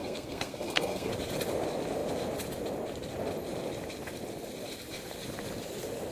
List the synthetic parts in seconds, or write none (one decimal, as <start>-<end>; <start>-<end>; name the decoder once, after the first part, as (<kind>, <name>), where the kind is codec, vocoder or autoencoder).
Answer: 0.0-1.1 (codec, SNAC)